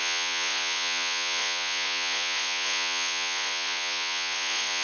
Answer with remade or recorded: remade